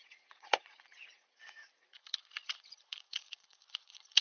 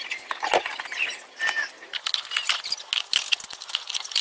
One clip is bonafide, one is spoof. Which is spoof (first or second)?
first